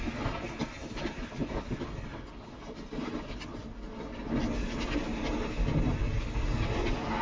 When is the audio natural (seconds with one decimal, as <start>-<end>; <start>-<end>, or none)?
0.0-7.2